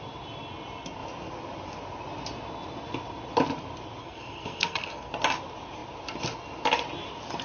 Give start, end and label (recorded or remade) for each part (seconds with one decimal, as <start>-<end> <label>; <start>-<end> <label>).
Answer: 0.0-4.0 recorded; 4.0-5.1 remade; 5.1-7.4 recorded